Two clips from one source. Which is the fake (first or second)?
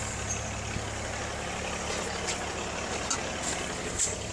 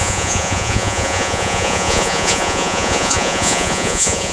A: second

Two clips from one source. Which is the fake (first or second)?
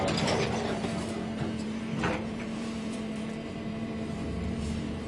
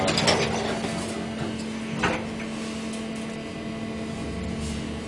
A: first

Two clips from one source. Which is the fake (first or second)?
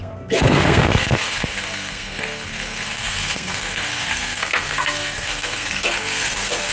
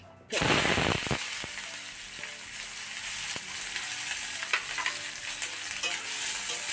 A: first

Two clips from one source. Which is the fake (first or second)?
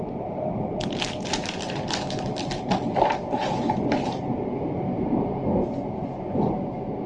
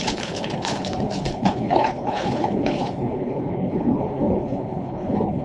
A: second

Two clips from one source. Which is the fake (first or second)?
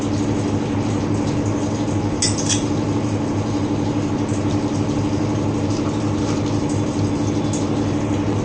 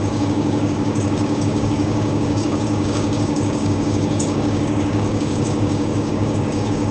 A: second